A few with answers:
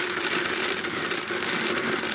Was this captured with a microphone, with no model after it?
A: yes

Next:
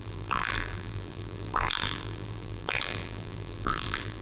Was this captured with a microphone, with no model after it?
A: no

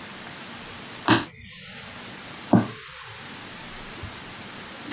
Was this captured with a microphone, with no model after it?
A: yes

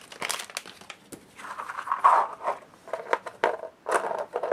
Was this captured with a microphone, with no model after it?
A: yes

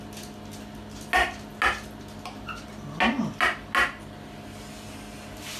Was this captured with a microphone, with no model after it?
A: yes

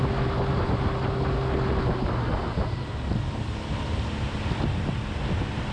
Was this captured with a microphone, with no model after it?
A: yes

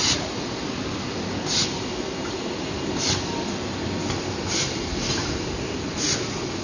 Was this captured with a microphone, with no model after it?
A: yes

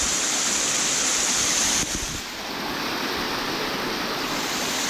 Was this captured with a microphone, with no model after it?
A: yes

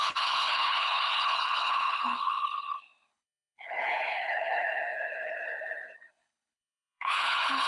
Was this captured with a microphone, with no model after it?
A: no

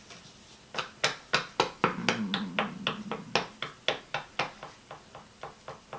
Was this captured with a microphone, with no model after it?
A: yes